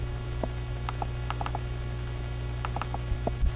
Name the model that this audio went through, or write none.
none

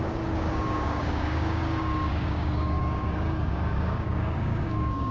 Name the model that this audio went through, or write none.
codec, DAC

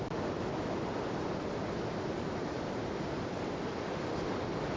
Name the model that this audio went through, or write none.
vocoder, BigVGAN v2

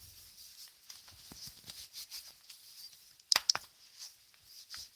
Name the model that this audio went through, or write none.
none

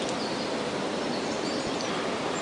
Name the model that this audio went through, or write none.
none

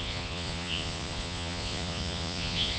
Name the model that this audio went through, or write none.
vocoder, Vocos